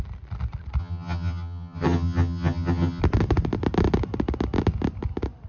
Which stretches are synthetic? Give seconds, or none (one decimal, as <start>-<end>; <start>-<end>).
0.8-3.0

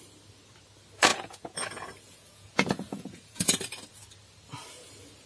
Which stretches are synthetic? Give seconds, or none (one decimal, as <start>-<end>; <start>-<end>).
1.1-3.4

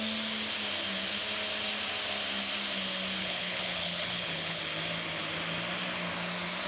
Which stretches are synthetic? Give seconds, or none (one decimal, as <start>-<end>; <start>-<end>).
3.2-4.6

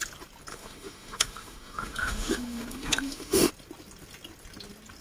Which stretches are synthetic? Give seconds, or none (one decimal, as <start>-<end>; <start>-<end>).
0.5-3.5

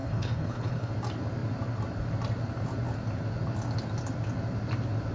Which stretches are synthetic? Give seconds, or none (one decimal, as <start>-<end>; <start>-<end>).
0.0-0.9

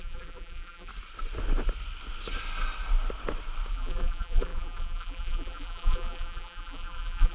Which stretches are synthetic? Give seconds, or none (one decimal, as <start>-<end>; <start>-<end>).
0.0-0.9; 3.7-7.3

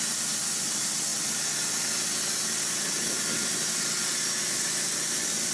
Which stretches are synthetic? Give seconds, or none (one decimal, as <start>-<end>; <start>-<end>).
none

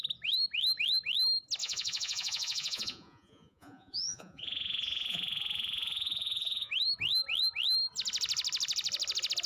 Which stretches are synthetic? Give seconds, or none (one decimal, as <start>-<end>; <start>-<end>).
1.6-6.7